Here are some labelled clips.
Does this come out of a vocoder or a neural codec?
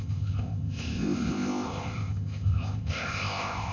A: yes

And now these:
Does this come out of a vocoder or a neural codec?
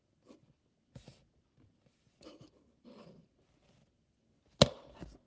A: no